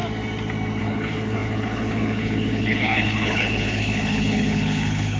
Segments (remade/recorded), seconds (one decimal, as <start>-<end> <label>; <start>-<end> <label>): 0.0-0.8 recorded; 0.8-5.2 remade